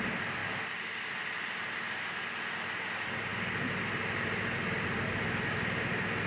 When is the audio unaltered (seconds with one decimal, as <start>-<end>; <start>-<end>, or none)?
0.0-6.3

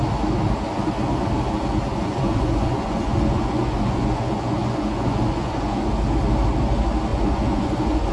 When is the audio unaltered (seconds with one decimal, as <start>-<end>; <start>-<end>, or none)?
0.0-1.9; 5.9-7.1

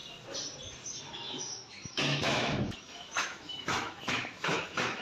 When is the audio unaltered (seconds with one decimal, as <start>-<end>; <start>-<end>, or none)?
0.0-1.0